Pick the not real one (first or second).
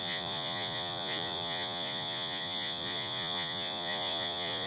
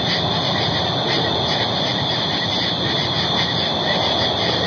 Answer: first